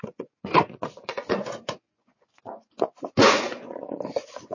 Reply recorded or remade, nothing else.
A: remade